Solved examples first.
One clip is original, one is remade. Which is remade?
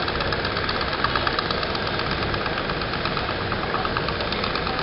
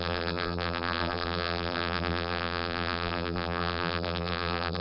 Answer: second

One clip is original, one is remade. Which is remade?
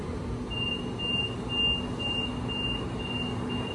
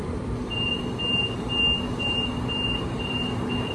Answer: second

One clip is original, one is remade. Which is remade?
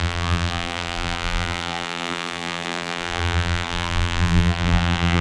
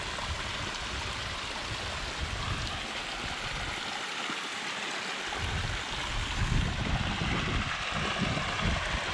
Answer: first